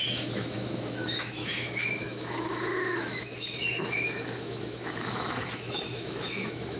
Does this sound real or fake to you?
fake